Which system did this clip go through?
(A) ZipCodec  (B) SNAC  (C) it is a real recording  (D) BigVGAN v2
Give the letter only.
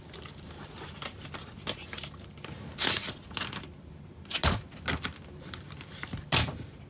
C